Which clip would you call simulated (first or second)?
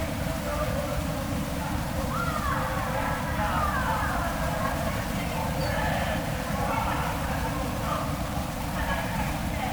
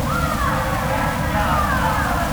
first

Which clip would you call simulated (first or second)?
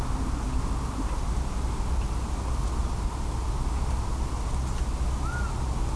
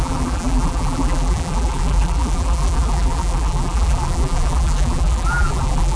second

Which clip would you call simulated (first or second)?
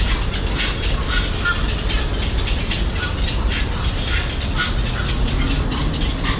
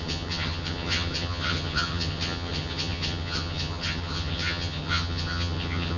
second